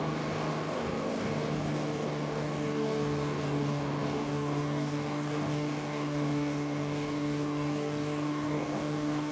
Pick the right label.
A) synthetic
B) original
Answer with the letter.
A